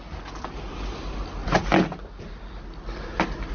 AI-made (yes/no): no